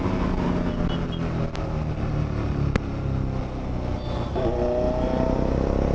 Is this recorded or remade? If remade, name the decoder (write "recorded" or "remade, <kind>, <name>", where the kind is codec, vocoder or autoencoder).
recorded